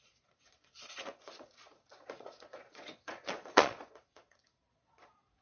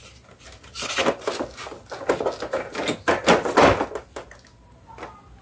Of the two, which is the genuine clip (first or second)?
second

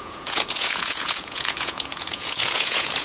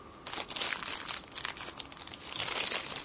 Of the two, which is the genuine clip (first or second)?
second